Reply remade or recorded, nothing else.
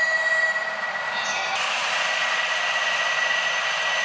recorded